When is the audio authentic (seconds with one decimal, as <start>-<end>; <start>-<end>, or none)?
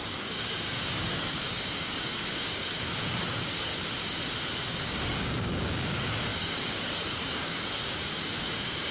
3.7-4.7